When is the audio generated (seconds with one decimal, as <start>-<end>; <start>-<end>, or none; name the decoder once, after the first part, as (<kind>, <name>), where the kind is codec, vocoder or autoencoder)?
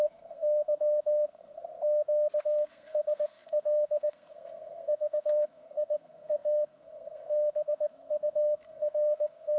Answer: 0.0-1.6 (codec, SNAC); 2.4-9.6